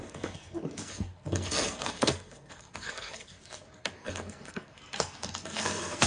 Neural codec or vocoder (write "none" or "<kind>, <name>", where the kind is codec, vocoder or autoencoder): codec, SNAC